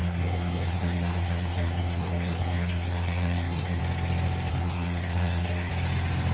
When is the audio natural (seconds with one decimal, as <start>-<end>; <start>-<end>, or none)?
3.8-4.5; 5.7-6.3